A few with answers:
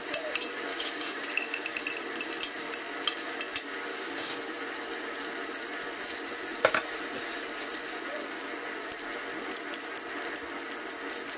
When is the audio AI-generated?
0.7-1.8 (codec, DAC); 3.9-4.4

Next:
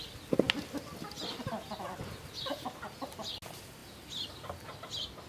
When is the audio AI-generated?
none

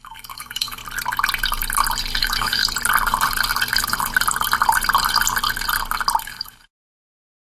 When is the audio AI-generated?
0.0-0.8 (codec, DAC); 2.2-2.6; 6.2-7.6